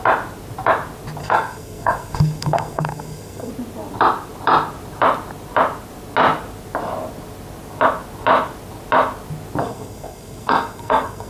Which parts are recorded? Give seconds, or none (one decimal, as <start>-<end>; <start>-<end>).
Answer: 0.0-1.2; 3.5-9.6